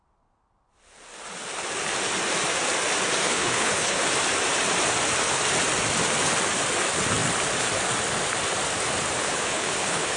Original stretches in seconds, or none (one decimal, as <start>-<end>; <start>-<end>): 0.0-3.2; 4.0-9.2